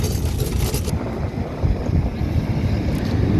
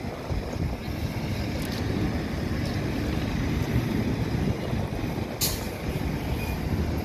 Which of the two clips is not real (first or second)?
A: first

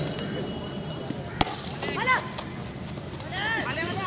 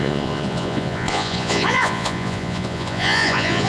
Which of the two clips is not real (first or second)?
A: second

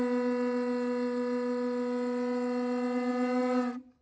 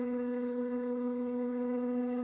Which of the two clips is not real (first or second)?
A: second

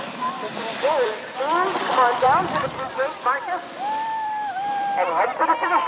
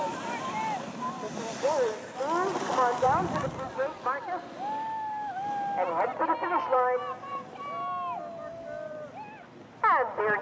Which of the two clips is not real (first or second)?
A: first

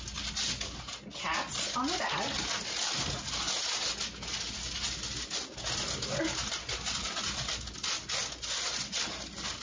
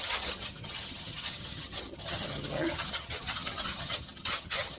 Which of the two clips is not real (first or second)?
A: second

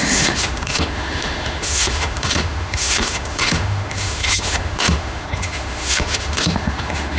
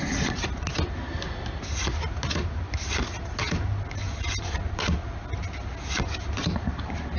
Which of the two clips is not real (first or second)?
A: first